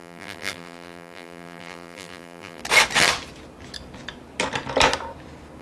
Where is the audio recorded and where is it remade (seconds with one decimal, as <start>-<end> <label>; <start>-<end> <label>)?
0.0-2.6 remade; 2.6-5.6 recorded